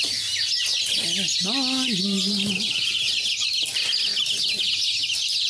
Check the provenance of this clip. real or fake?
real